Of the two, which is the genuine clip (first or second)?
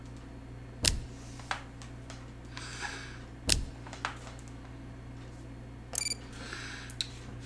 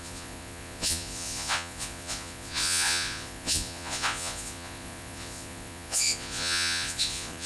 first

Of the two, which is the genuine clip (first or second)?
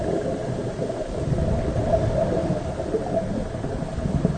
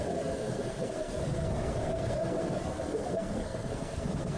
first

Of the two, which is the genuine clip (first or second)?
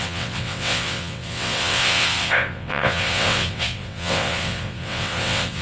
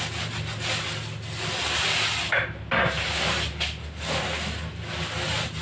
second